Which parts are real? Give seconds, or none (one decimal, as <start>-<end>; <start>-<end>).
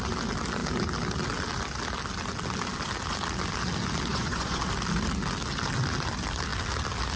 0.0-4.1; 4.6-7.2